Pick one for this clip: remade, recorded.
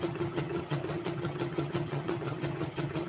remade